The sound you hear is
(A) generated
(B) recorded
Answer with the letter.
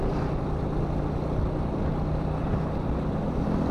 B